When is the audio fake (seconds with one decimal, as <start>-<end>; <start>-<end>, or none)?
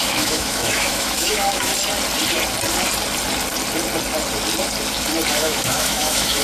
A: 0.0-1.7; 5.3-6.4